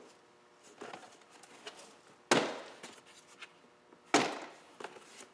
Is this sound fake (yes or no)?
no